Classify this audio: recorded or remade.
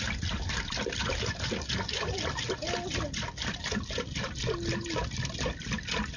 recorded